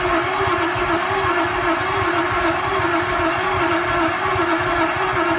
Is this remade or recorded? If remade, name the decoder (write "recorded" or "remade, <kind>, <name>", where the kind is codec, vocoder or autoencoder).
recorded